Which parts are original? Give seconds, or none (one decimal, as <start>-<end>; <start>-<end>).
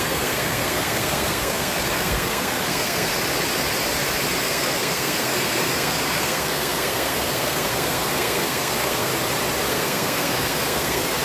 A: 3.1-4.4; 9.1-9.7